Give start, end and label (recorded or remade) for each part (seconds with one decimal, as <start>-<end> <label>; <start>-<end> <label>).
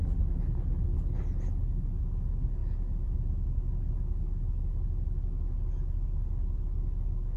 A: 0.0-7.4 recorded